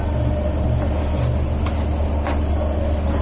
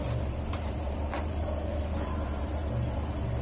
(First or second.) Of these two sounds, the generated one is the second